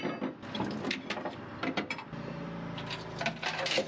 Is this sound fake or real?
real